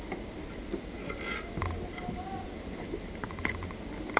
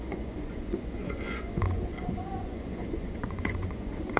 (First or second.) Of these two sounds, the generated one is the second